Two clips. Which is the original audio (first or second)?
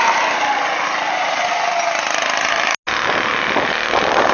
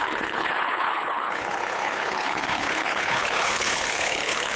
first